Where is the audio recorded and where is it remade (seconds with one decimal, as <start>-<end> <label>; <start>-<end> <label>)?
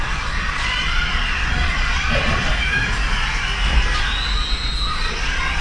0.0-2.5 remade; 2.5-4.9 recorded; 4.9-5.6 remade